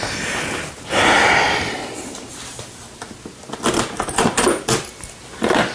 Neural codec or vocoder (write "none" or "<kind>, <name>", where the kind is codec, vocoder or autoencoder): none